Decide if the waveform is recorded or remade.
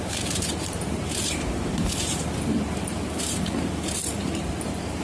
remade